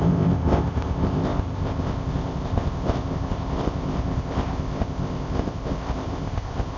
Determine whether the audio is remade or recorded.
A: remade